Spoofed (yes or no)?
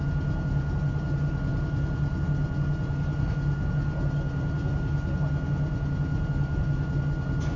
no